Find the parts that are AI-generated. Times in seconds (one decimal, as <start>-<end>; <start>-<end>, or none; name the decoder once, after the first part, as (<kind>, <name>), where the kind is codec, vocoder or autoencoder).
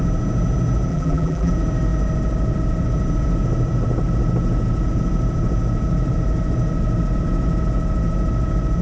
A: 0.9-1.5 (vocoder, BigVGAN v2)